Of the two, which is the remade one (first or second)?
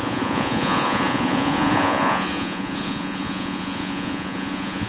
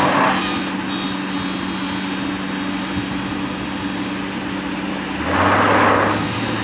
first